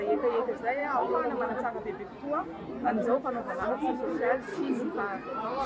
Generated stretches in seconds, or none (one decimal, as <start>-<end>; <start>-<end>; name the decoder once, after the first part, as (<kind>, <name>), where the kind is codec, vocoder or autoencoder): 4.5-5.0 (codec, DAC)